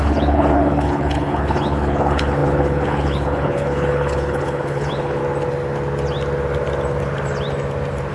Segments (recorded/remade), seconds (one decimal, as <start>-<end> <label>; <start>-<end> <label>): 0.0-5.2 remade; 5.2-8.1 recorded